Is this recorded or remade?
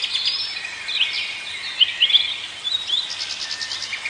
recorded